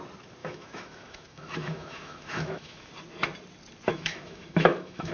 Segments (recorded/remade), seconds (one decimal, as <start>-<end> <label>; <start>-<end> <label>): 0.0-0.4 recorded; 0.4-2.9 remade; 2.9-3.9 recorded; 3.9-5.1 remade